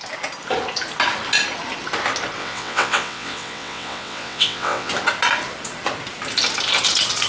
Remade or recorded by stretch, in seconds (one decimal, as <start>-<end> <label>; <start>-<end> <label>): 0.0-2.4 recorded; 2.4-4.9 remade; 4.9-7.3 recorded